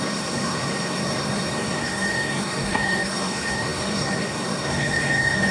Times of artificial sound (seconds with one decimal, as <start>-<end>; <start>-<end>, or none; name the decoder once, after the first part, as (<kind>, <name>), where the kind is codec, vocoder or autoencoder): 0.0-5.5 (codec, SNAC)